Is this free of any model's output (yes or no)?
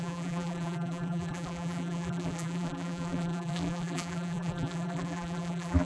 no